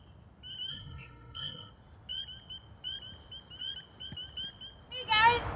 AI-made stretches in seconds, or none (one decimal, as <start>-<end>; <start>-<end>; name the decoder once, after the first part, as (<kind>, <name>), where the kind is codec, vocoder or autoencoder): 0.7-1.7 (codec, SNAC)